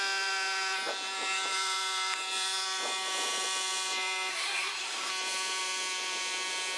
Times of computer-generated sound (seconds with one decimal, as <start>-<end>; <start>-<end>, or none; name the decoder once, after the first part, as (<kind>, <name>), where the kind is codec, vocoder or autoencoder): 4.3-5.1 (codec, SNAC)